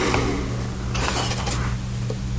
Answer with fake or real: real